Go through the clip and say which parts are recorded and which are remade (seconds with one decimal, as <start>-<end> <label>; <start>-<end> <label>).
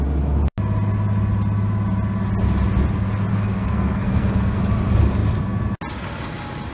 0.0-3.3 recorded; 3.3-4.6 remade; 4.6-6.7 recorded